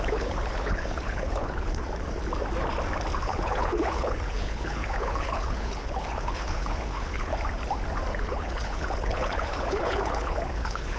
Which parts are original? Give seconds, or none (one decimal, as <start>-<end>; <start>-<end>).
1.8-3.2; 7.3-8.2